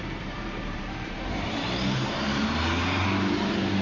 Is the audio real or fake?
fake